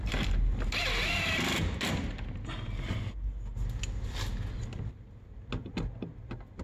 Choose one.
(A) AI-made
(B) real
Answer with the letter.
B